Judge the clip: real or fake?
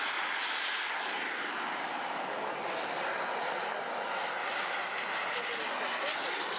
real